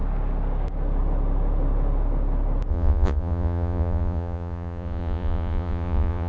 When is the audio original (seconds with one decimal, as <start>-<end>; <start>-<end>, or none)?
0.0-2.7